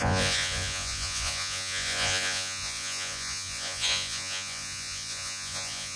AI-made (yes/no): yes